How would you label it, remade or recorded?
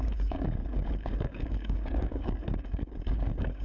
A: remade